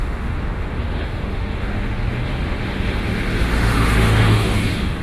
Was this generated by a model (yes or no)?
yes